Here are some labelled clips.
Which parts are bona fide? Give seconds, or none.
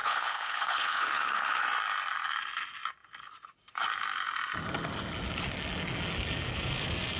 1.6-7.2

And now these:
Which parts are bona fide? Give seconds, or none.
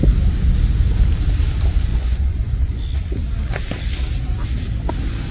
0.0-1.9; 2.8-5.3